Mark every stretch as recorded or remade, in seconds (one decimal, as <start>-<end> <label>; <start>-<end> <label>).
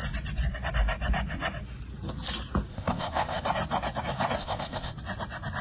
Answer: 0.0-2.7 recorded; 2.7-3.4 remade; 3.4-4.4 recorded; 4.4-4.9 remade; 4.9-5.6 recorded